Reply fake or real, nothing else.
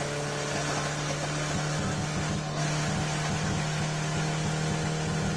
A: real